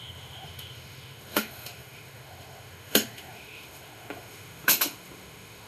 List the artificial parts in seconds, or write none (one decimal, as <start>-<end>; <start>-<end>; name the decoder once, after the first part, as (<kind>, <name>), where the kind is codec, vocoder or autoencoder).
0.0-5.7 (autoencoder, DAC-VAE)